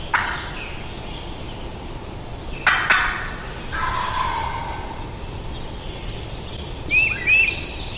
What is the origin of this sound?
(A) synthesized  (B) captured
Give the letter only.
B